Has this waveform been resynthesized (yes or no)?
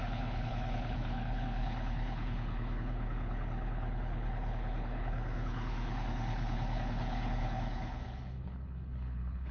yes